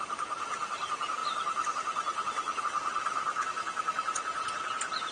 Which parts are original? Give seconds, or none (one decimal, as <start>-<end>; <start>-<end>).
0.0-5.1